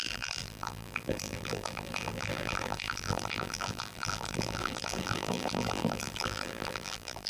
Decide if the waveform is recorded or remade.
remade